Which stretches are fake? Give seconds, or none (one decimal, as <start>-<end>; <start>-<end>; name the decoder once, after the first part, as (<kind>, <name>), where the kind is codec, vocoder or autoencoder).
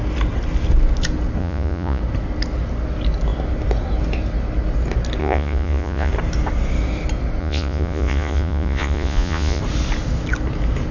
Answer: 1.4-2.0 (vocoder, Vocos); 5.2-6.1; 7.4-9.6